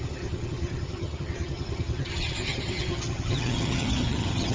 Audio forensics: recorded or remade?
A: remade